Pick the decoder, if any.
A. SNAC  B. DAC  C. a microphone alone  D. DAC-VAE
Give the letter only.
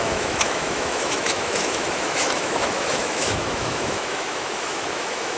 D